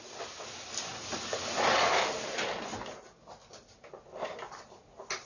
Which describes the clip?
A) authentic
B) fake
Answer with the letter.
A